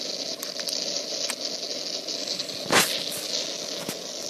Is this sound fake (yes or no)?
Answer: no